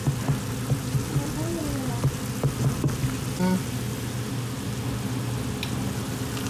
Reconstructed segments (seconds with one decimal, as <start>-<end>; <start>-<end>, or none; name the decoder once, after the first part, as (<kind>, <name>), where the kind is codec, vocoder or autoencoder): none